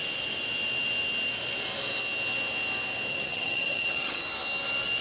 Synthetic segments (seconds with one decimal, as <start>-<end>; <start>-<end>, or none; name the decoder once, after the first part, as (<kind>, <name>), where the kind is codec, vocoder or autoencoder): 3.1-4.2 (vocoder, HiFi-GAN)